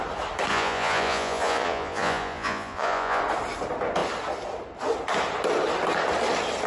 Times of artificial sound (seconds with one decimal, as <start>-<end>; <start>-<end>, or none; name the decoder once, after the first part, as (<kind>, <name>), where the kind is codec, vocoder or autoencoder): 0.5-3.2 (vocoder, Vocos)